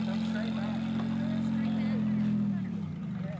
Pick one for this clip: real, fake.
real